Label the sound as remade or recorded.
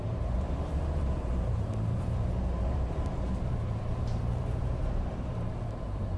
remade